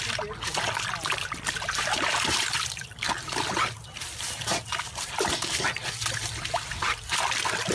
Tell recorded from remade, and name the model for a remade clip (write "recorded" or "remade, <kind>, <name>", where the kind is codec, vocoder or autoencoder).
recorded